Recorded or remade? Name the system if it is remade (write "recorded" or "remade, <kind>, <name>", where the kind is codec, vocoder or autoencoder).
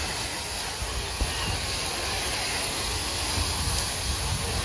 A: recorded